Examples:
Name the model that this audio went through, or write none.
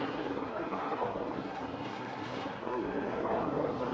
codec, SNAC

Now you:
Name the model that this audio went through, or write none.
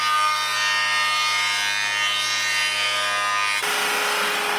none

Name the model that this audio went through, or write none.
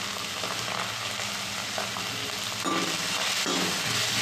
none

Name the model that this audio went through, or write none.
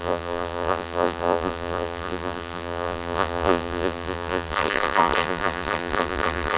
vocoder, BigVGAN v2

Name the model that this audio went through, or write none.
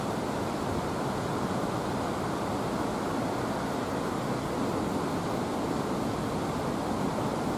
none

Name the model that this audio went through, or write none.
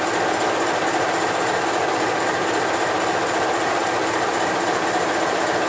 none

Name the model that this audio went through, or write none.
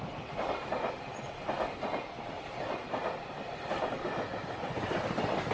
none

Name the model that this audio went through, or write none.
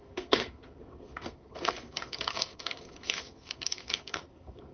codec, SNAC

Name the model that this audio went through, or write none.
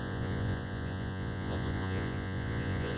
vocoder, Vocos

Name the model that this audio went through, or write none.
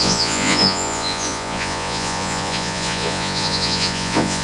vocoder, Vocos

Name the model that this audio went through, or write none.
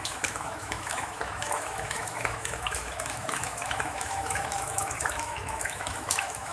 autoencoder, DAC-VAE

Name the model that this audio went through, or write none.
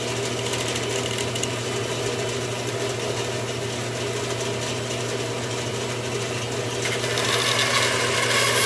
none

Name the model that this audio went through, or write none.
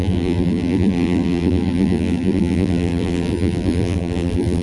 vocoder, BigVGAN v2